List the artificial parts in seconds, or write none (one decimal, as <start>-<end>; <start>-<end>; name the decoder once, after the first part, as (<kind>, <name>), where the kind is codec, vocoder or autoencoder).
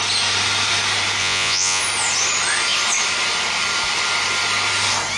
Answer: 1.2-1.8 (vocoder, Vocos)